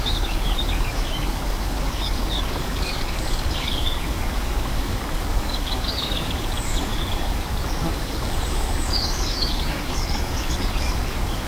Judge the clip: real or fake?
fake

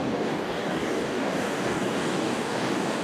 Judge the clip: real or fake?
fake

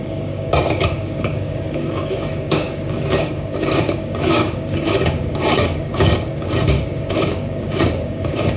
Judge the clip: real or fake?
fake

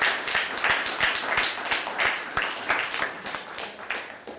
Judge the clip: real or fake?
real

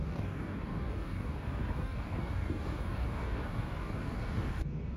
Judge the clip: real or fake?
fake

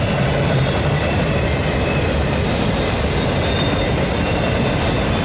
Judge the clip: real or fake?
real